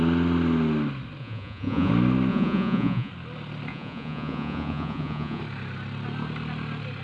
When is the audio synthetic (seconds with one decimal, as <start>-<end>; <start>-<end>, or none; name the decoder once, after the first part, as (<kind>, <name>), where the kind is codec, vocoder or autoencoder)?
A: 1.2-1.9 (vocoder, Vocos); 2.3-3.1; 3.7-5.4